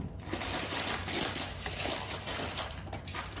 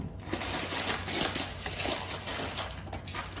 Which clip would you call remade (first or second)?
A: first